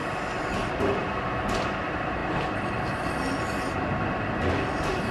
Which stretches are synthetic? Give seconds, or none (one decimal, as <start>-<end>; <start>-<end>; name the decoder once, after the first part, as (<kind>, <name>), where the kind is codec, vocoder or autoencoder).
none